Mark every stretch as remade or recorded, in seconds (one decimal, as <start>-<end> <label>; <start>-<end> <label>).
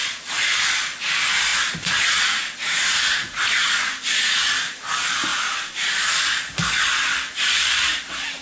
0.0-1.5 recorded; 1.5-4.5 remade; 4.5-5.3 recorded; 5.3-5.9 remade; 5.9-8.4 recorded